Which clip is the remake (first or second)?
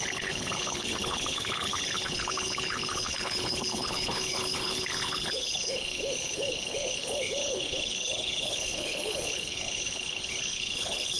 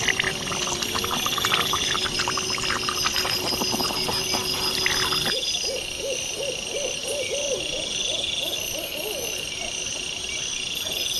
first